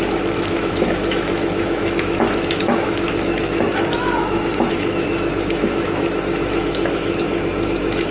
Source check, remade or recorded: remade